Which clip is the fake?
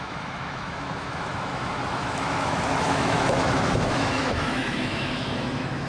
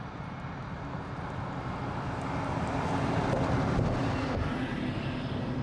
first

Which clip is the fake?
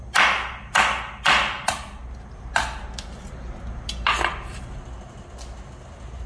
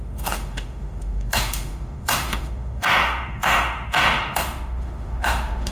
second